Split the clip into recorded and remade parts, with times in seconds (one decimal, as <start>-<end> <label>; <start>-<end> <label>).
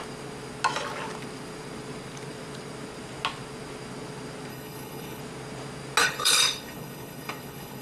0.0-4.5 recorded; 4.5-5.2 remade; 5.2-6.0 recorded; 6.0-7.8 remade